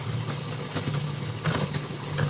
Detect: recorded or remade recorded